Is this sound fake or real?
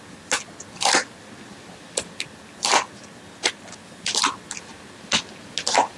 real